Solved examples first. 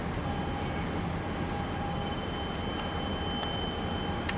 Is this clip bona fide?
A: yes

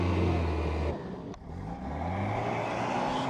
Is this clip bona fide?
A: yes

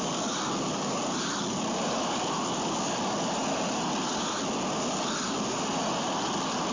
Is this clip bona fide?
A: yes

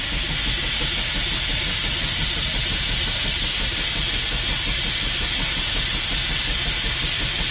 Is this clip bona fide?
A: yes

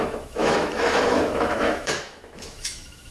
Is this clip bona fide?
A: no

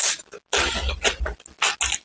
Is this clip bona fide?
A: yes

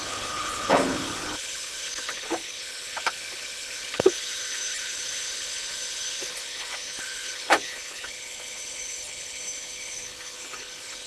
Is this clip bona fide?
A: no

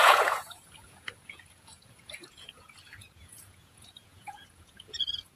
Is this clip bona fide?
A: no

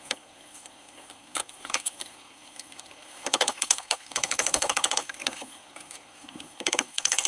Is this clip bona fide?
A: no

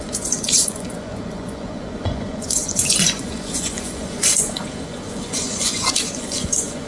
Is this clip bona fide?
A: no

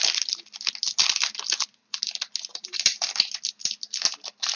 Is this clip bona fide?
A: yes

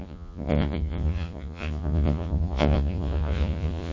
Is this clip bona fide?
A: no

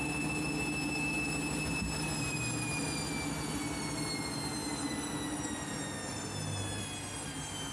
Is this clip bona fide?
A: yes